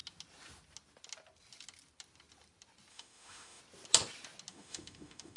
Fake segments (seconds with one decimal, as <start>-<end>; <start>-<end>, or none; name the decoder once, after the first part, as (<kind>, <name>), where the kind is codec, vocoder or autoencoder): 2.9-3.6 (autoencoder, DAC-VAE); 4.5-5.4